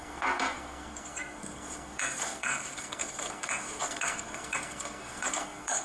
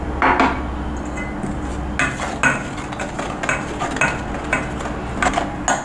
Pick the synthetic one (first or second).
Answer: first